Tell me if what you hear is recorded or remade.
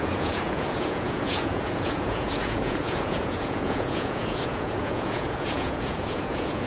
remade